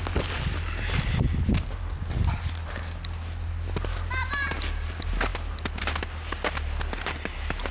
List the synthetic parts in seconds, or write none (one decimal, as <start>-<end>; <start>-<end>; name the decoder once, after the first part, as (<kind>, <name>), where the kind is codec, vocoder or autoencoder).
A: none